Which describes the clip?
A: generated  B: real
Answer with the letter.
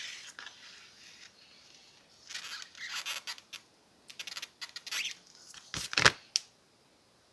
B